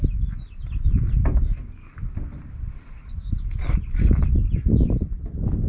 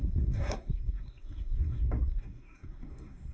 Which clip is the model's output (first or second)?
second